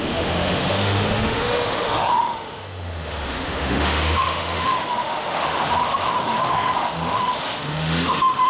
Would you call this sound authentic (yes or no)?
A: no